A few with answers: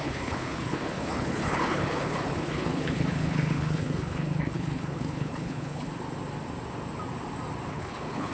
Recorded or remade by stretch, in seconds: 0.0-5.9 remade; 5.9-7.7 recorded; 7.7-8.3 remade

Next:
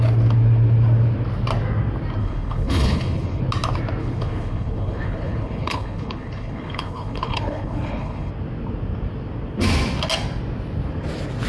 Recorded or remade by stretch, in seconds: 0.0-2.2 recorded; 2.2-3.4 remade; 3.4-4.0 recorded; 4.0-8.3 remade; 8.3-11.5 recorded

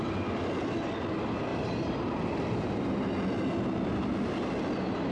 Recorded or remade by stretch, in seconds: 0.0-1.5 recorded; 1.5-3.0 remade; 3.0-5.1 recorded